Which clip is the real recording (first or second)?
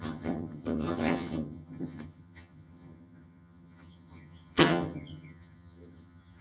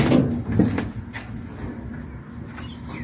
second